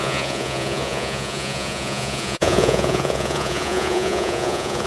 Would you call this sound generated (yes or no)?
yes